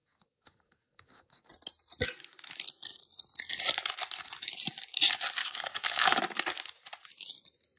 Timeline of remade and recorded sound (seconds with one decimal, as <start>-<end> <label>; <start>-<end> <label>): 0.0-1.5 remade; 1.5-5.4 recorded; 5.4-6.2 remade; 6.2-7.8 recorded